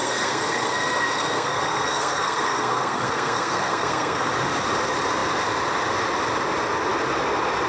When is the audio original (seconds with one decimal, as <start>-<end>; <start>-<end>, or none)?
4.3-7.7